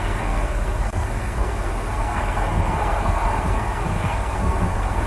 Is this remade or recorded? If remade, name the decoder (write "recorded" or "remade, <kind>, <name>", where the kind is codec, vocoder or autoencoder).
remade, codec, SNAC